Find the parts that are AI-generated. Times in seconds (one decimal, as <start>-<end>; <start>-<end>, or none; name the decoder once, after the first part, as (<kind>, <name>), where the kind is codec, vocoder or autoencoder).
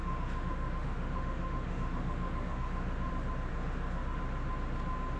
0.0-3.1 (autoencoder, DAC-VAE); 3.5-4.2